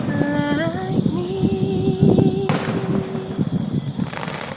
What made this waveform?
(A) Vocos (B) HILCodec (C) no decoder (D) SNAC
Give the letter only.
C